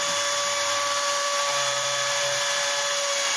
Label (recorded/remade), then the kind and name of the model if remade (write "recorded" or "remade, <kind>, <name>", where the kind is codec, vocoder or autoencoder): remade, vocoder, BigVGAN v2